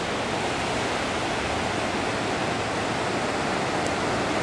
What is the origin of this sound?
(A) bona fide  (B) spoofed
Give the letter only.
A